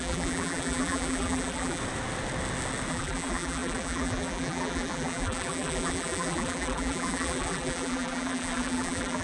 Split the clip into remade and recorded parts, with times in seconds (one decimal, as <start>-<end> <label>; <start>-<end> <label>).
0.0-1.8 remade; 1.8-2.9 recorded; 2.9-9.2 remade